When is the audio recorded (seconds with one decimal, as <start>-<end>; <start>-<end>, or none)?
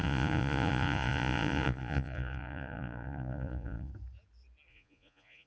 3.9-4.7